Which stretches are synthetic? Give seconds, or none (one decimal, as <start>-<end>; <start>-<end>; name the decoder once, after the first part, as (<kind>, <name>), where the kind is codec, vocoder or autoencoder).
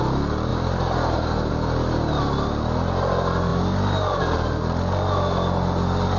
0.5-1.5 (vocoder, BigVGAN v2)